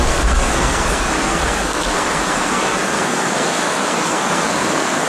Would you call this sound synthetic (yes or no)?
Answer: yes